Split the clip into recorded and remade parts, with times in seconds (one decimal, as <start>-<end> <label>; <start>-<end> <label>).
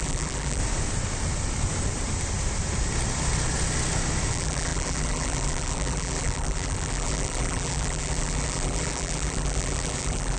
0.0-0.6 remade; 0.6-4.3 recorded; 4.3-10.4 remade